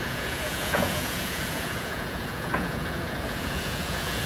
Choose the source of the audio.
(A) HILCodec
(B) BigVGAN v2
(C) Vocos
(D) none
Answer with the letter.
C